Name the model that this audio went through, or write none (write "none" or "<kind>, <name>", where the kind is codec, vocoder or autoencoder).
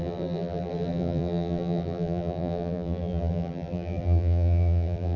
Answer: vocoder, BigVGAN v2